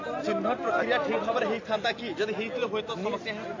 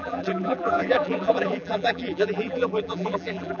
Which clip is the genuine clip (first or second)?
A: first